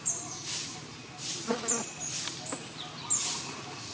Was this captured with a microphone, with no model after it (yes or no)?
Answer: yes